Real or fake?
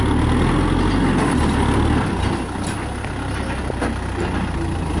real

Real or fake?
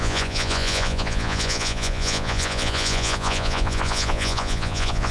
fake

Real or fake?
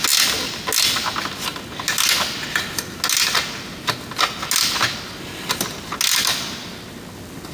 real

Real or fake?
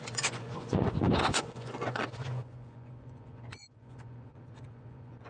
fake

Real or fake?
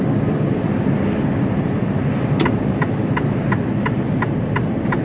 real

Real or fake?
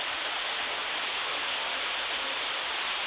real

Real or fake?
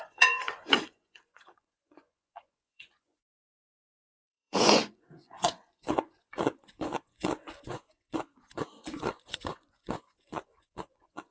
fake